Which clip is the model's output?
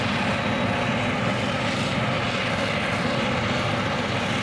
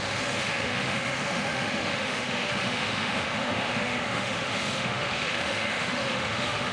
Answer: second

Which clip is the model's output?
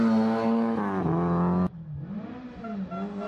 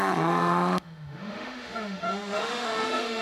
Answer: second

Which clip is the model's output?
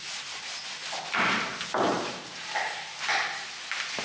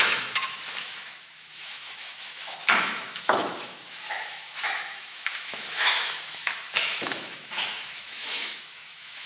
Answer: second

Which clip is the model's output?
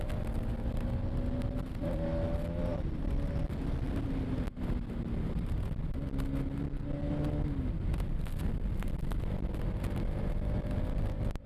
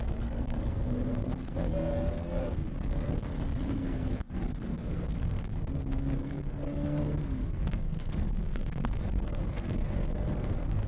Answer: second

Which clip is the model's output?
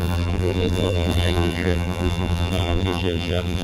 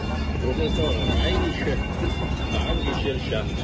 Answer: first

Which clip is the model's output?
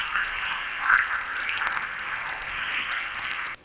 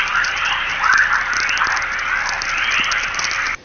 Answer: first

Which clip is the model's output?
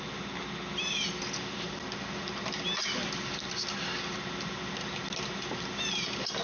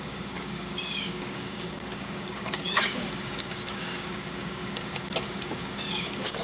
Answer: second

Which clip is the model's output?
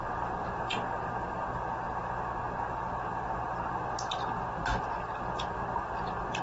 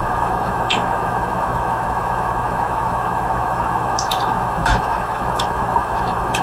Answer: second